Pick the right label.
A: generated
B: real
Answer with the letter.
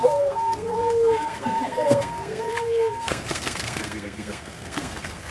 A